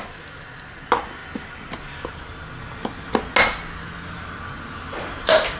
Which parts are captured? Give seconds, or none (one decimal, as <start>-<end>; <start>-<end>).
0.0-5.6